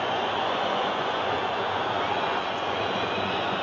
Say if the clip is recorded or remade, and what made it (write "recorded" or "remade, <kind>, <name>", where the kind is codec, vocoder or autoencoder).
remade, vocoder, Vocos